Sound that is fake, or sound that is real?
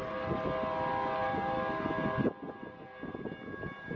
real